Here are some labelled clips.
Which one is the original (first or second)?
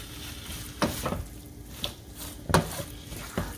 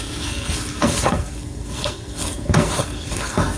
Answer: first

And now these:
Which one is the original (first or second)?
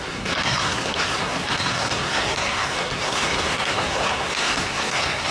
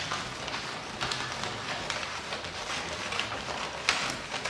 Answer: second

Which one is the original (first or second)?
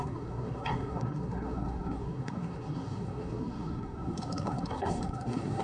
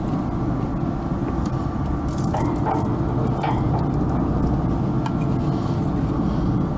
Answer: second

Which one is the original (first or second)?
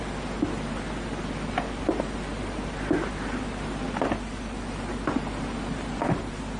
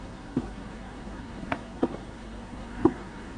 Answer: first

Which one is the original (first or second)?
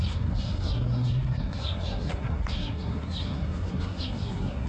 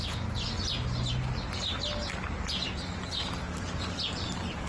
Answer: second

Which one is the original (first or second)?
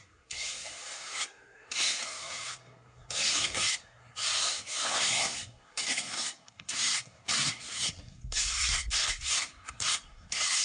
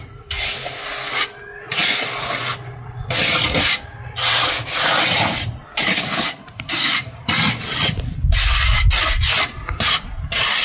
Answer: second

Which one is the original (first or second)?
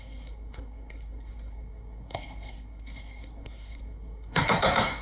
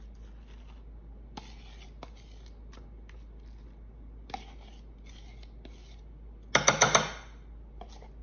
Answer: second